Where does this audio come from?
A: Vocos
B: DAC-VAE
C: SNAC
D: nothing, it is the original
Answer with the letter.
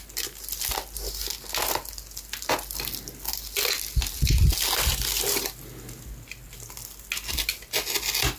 D